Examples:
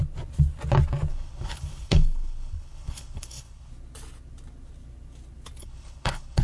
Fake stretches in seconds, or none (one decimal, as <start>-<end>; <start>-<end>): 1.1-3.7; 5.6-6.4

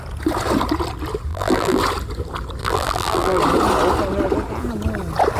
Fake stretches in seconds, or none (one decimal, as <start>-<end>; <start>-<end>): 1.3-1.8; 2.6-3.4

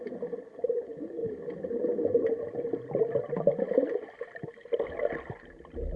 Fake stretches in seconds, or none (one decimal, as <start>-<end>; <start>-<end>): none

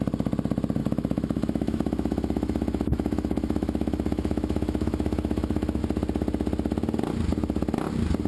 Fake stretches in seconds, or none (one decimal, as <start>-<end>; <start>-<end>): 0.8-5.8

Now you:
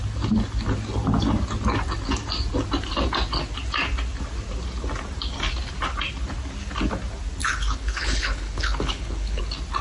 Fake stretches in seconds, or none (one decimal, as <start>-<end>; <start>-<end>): 7.4-9.4